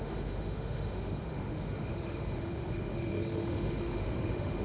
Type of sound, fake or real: fake